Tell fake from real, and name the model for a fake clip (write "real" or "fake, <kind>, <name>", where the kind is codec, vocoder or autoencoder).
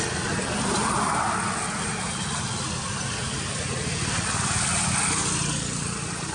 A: real